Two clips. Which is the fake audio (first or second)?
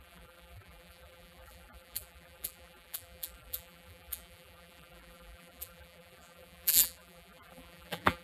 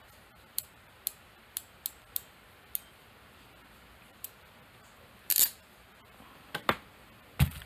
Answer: first